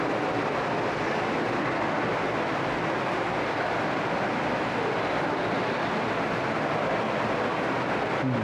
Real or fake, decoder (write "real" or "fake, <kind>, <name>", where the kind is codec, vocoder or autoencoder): real